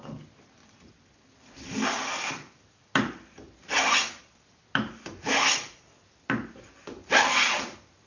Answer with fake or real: real